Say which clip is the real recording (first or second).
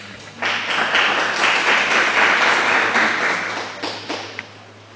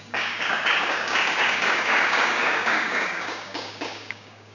first